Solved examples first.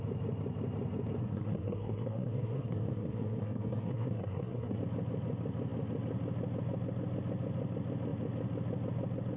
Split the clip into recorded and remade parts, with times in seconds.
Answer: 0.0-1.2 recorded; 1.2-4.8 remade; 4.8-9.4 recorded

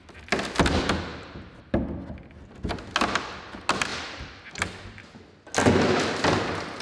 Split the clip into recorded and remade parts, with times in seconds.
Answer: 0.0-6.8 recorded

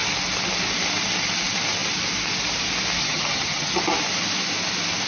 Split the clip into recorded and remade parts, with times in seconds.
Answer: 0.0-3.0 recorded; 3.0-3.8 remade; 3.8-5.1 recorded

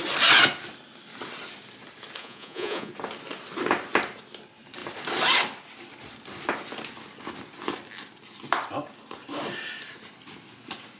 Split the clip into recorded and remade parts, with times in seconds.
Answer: 0.0-2.2 recorded; 2.2-2.9 remade; 2.9-11.0 recorded

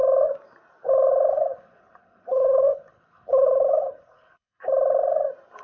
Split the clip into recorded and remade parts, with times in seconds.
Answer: 0.0-1.3 recorded; 1.3-4.6 remade; 4.6-5.6 recorded